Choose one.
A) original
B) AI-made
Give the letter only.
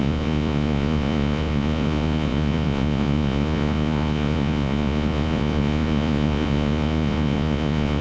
B